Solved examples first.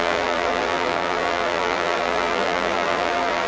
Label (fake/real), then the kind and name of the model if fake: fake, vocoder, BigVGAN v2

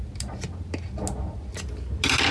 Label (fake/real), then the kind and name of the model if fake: real